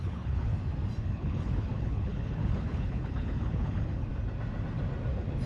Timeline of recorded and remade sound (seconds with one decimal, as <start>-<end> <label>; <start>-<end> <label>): 0.0-0.5 remade; 0.5-1.0 recorded; 1.0-4.1 remade; 4.1-5.5 recorded